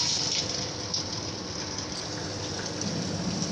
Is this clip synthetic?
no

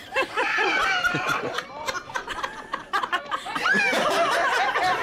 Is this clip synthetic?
yes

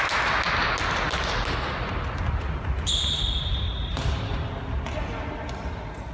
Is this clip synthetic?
no